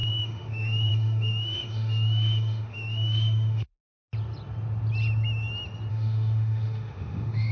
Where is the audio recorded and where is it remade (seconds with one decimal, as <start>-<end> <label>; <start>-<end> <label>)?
0.0-3.7 remade; 3.7-5.9 recorded; 5.9-7.5 remade